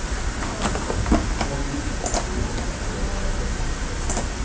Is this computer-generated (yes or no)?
no